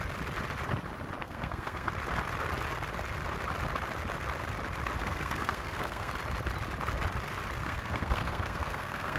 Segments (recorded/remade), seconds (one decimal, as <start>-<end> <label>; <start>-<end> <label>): 0.0-1.2 recorded; 1.2-1.9 remade; 1.9-5.0 recorded; 5.0-6.1 remade; 6.1-7.6 recorded; 7.6-9.2 remade